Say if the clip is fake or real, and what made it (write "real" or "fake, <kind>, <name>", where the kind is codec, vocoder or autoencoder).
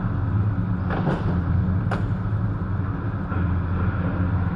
real